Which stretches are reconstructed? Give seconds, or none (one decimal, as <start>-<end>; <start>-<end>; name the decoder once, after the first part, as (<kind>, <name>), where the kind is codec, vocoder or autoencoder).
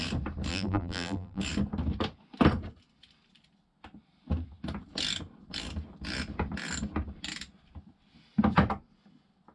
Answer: 0.5-1.4 (vocoder, BigVGAN v2)